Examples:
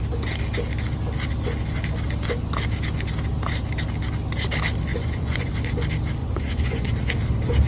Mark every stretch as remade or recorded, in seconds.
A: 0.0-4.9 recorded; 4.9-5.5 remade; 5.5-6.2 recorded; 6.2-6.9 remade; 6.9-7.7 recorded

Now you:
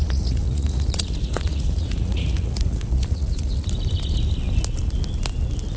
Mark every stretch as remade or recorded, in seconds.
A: 0.0-3.5 remade; 3.5-5.8 recorded

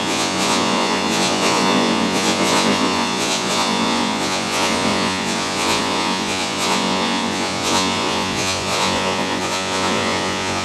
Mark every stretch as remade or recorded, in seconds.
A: 0.0-10.6 remade

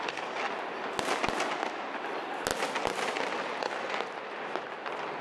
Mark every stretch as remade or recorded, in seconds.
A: 0.0-5.2 recorded